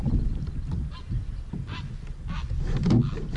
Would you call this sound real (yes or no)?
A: yes